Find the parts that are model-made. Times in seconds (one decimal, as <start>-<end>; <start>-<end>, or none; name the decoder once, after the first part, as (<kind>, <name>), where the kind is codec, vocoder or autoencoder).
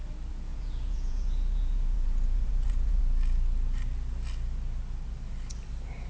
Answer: 0.5-3.0 (vocoder, Vocos)